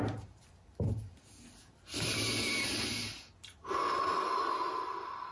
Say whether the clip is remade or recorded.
recorded